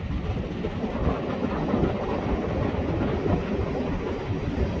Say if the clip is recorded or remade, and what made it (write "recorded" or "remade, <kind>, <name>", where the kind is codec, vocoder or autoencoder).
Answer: recorded